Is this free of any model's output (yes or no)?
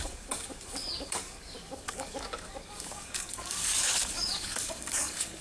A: no